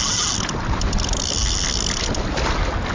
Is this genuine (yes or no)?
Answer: yes